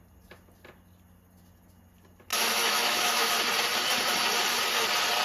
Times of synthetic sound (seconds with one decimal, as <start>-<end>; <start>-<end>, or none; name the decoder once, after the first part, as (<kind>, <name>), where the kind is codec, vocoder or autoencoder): 2.3-3.3 (autoencoder, DAC-VAE)